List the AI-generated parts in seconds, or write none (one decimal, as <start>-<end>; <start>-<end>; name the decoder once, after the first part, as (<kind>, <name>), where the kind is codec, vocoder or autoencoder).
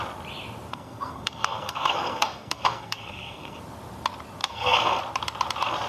0.7-3.6 (codec, SNAC); 4.4-5.0